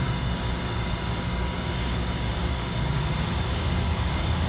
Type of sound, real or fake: fake